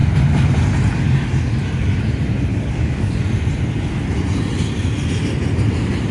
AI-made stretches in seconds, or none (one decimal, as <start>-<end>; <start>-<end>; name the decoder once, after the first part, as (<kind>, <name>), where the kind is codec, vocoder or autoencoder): 2.5-3.1 (codec, DAC)